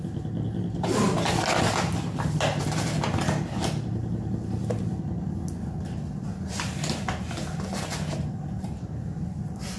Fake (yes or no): no